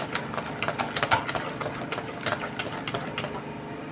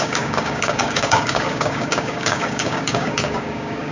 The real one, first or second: first